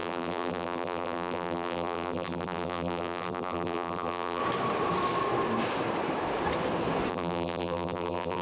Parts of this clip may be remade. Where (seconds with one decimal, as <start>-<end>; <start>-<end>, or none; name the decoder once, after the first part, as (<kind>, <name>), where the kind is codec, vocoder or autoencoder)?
0.0-4.4 (vocoder, BigVGAN v2); 7.1-8.4